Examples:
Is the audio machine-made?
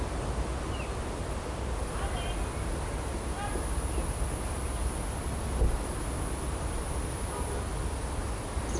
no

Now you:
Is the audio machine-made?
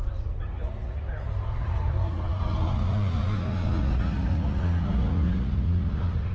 yes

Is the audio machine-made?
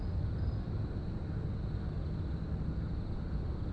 no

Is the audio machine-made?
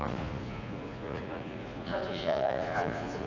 yes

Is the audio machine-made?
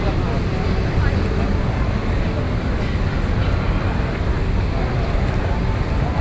no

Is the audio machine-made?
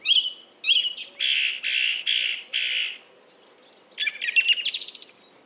no